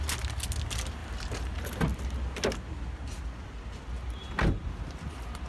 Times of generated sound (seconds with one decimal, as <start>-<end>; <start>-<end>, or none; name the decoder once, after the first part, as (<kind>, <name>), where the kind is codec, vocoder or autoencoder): none